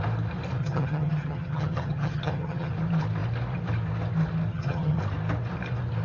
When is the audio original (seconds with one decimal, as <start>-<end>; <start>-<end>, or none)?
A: 0.0-0.6; 2.7-4.5; 5.0-6.0